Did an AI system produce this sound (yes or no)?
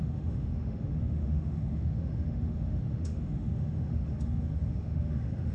yes